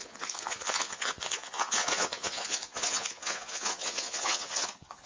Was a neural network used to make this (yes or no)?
yes